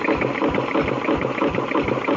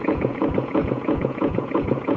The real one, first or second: first